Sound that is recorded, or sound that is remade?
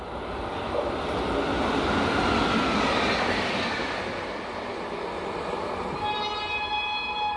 recorded